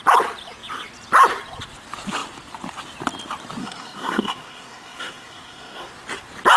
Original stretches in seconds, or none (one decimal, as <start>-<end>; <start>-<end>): 0.0-3.6; 5.9-6.6